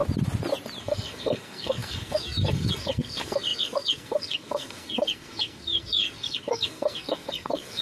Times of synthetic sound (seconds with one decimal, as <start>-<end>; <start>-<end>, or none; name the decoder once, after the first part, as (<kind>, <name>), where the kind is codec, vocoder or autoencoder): 0.8-7.8 (codec, SNAC)